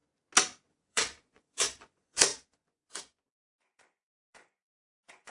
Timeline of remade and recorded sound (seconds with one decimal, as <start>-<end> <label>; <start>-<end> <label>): 0.0-0.7 recorded; 0.7-5.3 remade